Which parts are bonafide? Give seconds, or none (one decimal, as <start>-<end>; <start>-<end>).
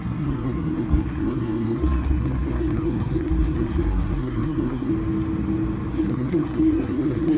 4.9-5.9